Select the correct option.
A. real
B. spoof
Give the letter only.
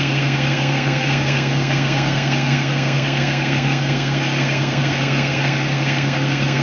B